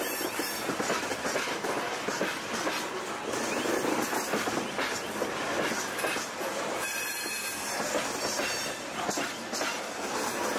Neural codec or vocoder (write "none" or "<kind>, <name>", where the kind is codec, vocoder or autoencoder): none